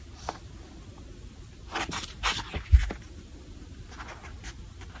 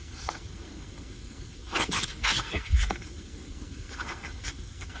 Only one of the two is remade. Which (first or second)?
second